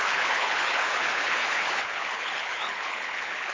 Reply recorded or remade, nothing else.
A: remade